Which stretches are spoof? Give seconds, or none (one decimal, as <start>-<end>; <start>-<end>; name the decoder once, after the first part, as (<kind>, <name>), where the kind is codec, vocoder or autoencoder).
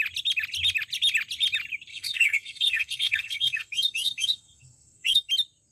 1.9-5.3 (codec, SNAC)